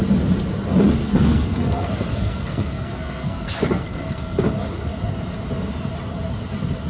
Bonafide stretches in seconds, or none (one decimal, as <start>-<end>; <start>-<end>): 0.0-1.0; 4.4-6.9